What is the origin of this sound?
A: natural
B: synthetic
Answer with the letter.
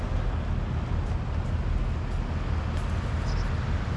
A